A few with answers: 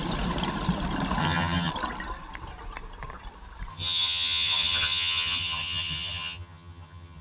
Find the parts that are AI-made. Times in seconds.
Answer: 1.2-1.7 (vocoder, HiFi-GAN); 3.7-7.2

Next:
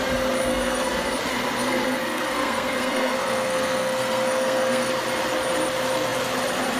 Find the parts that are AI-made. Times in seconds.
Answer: 0.5-1.1 (codec, SNAC); 1.6-4.9

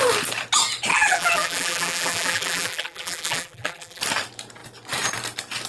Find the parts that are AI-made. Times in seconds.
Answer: 0.9-4.0 (vocoder, BigVGAN v2)

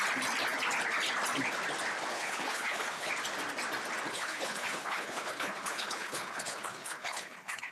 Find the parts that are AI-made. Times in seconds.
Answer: 2.1-3.1 (codec, HILCodec); 4.1-7.7

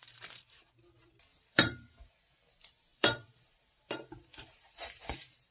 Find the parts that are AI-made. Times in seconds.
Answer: 0.0-0.7 (vocoder, BigVGAN v2); 1.3-2.1; 2.9-5.5

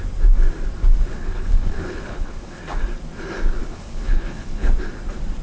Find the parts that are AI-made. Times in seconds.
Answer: 1.1-2.6 (codec, HILCodec); 3.6-4.7